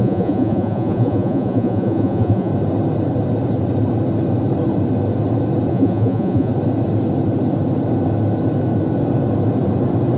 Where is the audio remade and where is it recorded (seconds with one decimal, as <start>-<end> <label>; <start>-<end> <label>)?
0.0-2.5 remade; 2.5-5.7 recorded; 5.7-6.5 remade; 6.5-10.2 recorded